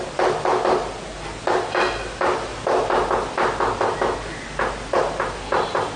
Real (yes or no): yes